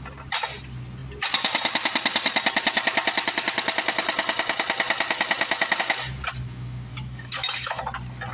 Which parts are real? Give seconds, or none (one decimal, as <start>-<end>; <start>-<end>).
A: 0.0-6.9; 7.8-8.3